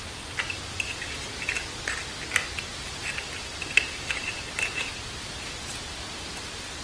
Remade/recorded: recorded